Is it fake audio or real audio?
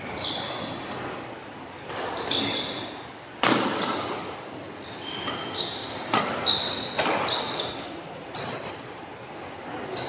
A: real